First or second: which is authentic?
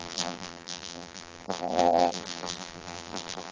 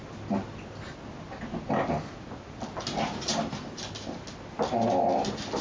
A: second